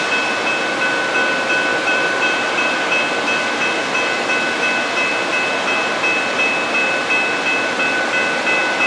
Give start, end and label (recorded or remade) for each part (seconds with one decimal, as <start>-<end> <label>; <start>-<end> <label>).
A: 0.0-1.7 recorded; 1.7-2.8 remade; 2.8-8.9 recorded